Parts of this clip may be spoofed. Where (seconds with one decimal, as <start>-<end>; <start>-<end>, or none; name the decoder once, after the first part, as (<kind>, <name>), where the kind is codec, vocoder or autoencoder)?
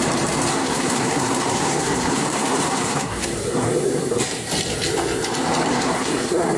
0.5-4.2 (codec, SNAC); 5.7-6.6